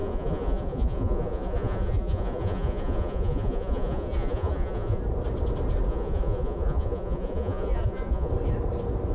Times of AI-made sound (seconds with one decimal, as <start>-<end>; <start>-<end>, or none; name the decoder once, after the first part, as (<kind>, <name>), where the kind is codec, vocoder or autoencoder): 0.0-5.0 (vocoder, Vocos); 5.9-8.3